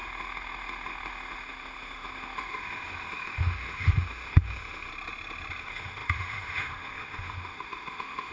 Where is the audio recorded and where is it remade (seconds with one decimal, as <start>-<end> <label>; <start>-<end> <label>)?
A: 0.0-4.9 remade; 4.9-5.6 recorded; 5.6-8.3 remade